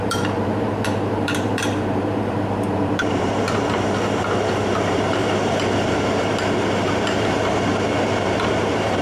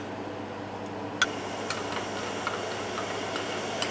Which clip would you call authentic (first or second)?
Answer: second